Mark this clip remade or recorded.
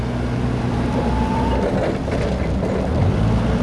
recorded